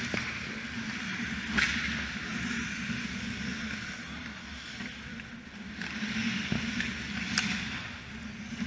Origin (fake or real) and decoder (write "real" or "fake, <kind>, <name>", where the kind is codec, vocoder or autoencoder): real